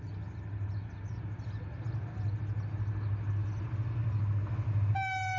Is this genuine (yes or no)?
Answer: yes